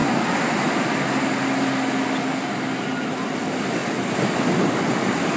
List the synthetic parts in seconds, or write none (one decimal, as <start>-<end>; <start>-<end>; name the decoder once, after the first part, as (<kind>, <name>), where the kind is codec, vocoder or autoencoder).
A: none